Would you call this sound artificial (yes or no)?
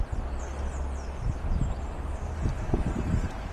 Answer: no